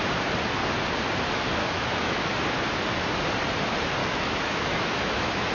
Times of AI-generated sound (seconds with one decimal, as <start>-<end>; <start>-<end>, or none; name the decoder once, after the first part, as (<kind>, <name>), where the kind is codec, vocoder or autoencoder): 1.6-2.4 (autoencoder, DAC-VAE); 4.0-5.5